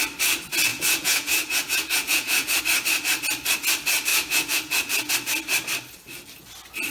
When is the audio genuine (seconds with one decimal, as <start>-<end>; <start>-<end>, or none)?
0.0-0.7; 2.6-4.1; 5.1-6.9